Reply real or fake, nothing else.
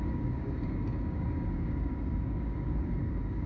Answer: fake